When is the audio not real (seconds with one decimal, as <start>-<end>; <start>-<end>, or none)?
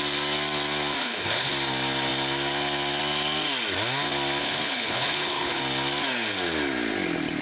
1.0-1.5; 4.4-5.6